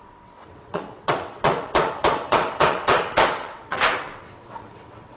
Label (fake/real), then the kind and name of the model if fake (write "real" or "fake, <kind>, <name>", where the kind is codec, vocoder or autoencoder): fake, vocoder, WaveNeXt